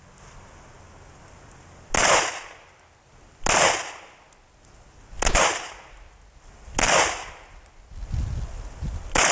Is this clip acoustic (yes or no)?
yes